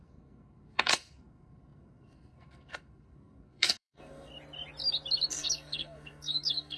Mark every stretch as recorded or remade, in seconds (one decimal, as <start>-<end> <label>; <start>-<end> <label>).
0.0-4.3 remade; 4.3-5.3 recorded; 5.3-6.8 remade